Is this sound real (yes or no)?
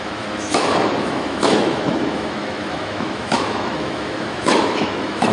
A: no